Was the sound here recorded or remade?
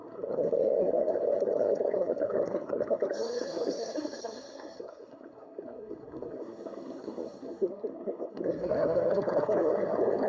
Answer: remade